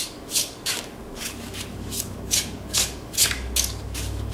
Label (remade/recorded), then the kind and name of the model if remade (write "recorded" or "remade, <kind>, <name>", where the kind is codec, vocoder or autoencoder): remade, codec, DAC